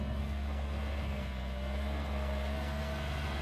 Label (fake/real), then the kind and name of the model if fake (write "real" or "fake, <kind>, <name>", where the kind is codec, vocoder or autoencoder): fake, codec, SNAC